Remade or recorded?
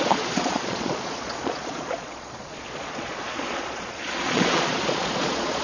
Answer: remade